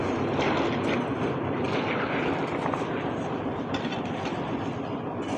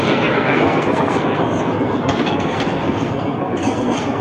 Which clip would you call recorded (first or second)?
first